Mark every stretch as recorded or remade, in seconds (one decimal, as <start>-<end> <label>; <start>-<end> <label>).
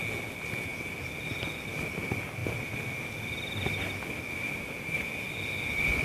0.0-6.0 recorded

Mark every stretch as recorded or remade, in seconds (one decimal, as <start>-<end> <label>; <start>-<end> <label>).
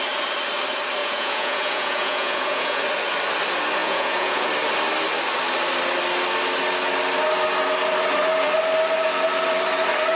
0.0-1.0 recorded; 1.0-2.8 remade; 2.8-3.8 recorded; 3.8-4.5 remade; 4.5-10.2 recorded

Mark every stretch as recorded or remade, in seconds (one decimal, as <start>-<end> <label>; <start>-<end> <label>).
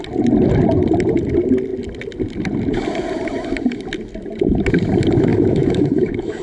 0.0-5.3 recorded; 5.3-6.4 remade